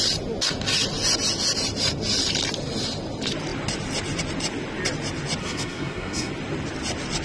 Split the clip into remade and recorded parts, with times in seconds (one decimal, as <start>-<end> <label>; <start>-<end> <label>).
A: 0.0-5.4 recorded; 5.4-6.3 remade; 6.3-7.2 recorded